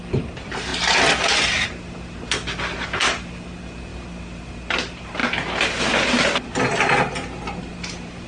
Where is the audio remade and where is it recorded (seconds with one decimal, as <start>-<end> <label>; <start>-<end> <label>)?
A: 0.0-3.9 recorded; 3.9-4.5 remade; 4.5-8.3 recorded